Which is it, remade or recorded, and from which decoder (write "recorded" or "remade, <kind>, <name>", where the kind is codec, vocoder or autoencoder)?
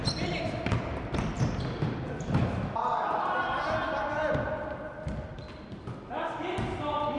recorded